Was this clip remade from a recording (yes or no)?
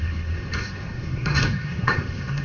yes